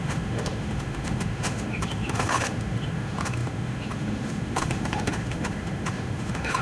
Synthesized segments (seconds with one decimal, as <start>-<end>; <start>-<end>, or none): 0.0-6.6